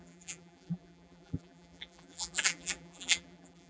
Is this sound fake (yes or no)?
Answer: yes